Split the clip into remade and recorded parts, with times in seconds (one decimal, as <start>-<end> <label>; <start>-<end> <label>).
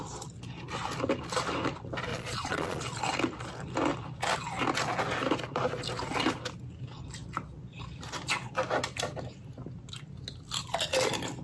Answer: 0.0-2.1 recorded; 2.1-2.8 remade; 2.8-11.4 recorded